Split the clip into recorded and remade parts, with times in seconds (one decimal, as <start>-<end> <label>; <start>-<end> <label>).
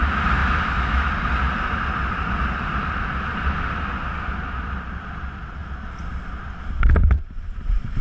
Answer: 0.0-0.4 recorded; 0.4-1.1 remade; 1.1-8.0 recorded